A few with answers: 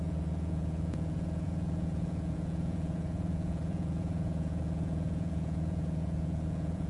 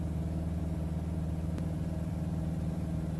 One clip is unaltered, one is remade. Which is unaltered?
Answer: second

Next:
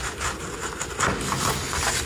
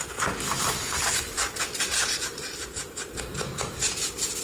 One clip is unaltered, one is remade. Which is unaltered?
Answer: first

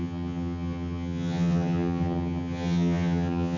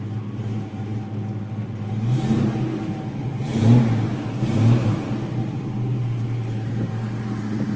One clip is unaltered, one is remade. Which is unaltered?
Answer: second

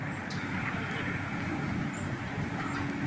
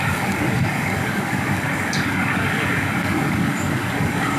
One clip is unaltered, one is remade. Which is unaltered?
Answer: first